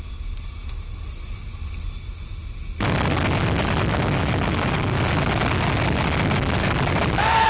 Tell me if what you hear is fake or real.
real